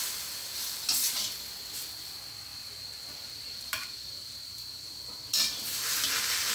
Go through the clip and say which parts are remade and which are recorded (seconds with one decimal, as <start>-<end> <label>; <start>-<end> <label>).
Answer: 0.0-2.5 recorded; 2.5-6.0 remade; 6.0-6.5 recorded

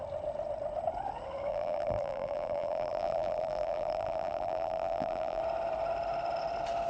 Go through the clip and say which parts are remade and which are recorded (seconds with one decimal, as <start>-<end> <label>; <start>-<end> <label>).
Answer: 0.0-1.5 recorded; 1.5-5.4 remade; 5.4-6.9 recorded

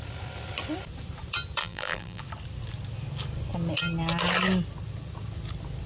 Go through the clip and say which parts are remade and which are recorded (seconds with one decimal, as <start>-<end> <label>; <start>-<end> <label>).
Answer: 0.0-1.6 recorded; 1.6-2.2 remade; 2.2-5.9 recorded

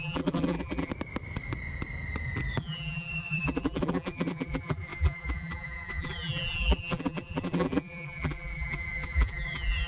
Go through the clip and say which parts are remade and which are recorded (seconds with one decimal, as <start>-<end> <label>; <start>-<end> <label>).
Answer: 0.0-0.9 remade; 0.9-2.6 recorded; 2.6-9.9 remade

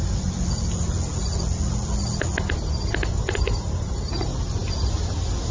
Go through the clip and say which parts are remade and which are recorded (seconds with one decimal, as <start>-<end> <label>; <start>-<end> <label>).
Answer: 0.0-5.5 recorded

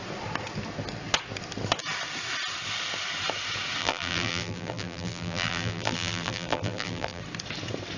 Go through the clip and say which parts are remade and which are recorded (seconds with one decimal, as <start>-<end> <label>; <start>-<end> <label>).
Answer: 0.0-3.8 recorded; 3.8-7.2 remade; 7.2-8.0 recorded